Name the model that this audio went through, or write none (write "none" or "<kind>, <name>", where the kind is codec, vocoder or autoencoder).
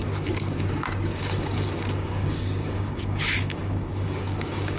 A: codec, DAC